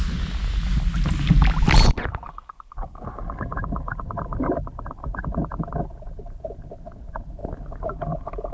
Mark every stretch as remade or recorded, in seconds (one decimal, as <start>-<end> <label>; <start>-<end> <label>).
0.0-8.5 recorded